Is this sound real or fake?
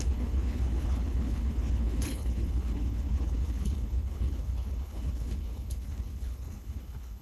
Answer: fake